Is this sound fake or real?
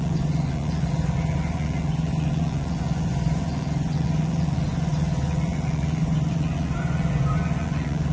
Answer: fake